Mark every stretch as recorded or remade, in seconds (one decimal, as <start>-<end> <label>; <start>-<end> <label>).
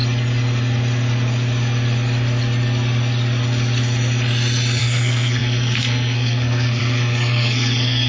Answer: 0.0-4.8 recorded; 4.8-8.1 remade